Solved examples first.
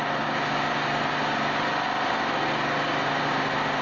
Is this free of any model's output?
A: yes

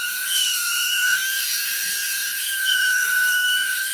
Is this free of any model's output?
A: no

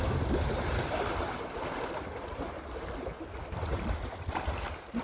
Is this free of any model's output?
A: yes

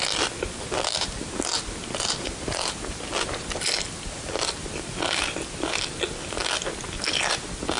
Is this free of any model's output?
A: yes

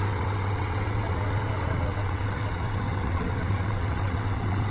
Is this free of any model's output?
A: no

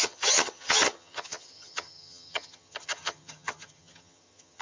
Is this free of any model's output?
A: no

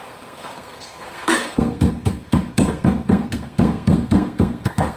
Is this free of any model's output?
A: no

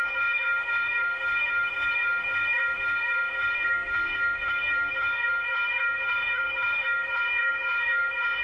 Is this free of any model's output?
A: no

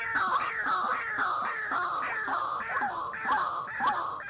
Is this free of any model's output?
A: yes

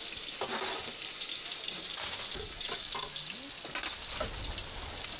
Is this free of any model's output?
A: yes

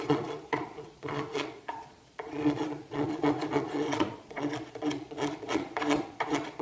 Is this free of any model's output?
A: no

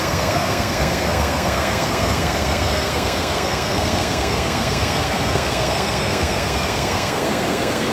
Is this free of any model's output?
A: no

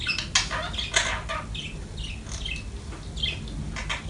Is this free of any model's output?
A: yes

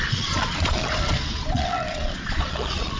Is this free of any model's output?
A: no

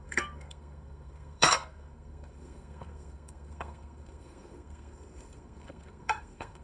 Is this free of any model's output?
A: no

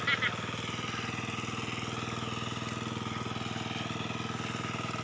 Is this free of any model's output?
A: yes